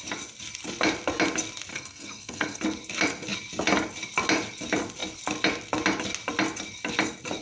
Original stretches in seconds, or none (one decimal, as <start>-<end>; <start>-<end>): 0.0-1.7; 2.6-7.4